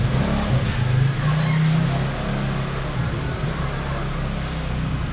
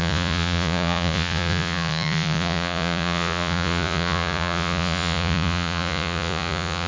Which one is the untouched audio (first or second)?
first